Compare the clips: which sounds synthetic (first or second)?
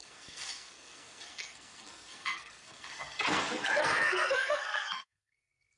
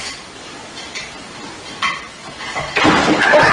first